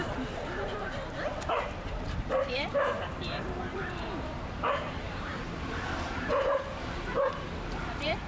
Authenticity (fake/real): fake